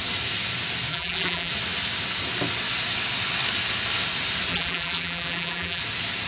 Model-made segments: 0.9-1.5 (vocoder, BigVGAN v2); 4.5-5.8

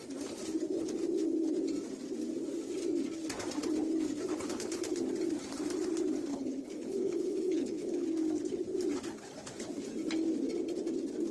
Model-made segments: 4.3-5.0 (codec, HILCodec); 6.3-8.1